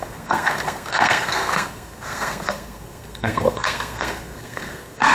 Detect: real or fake fake